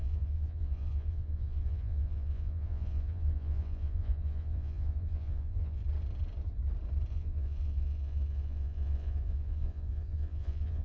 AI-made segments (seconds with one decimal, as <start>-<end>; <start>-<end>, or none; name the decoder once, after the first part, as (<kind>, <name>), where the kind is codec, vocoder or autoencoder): 0.0-5.8 (vocoder, Vocos); 7.1-10.8